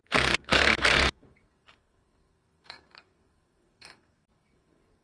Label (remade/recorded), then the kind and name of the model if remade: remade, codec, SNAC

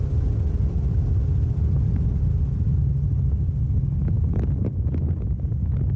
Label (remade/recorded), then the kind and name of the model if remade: recorded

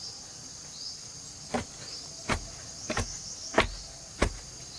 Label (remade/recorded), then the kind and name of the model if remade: recorded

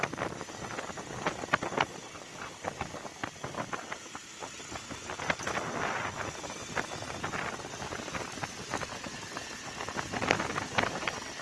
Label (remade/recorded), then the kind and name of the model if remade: recorded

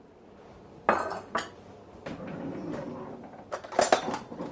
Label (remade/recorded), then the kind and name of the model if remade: recorded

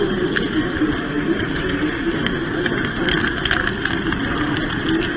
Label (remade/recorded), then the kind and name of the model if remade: recorded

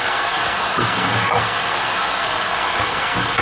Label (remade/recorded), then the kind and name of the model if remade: remade, codec, SNAC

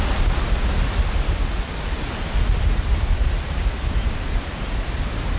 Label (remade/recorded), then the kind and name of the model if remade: recorded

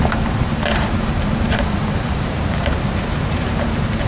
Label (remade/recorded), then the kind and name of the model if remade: remade, vocoder, BigVGAN v2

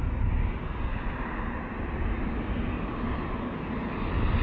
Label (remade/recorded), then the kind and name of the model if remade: recorded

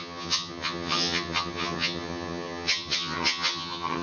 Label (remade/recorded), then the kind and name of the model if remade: remade, vocoder, HiFi-GAN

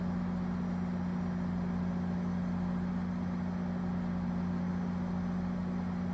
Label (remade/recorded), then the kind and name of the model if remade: recorded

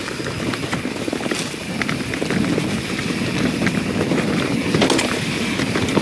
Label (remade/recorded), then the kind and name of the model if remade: recorded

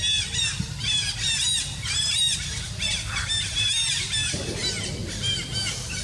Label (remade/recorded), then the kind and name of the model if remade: recorded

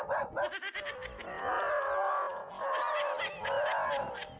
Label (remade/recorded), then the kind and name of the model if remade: recorded